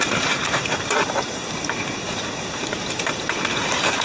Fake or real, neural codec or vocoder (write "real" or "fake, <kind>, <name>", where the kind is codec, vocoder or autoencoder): fake, vocoder, BigVGAN v2